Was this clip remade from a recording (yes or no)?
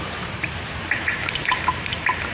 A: yes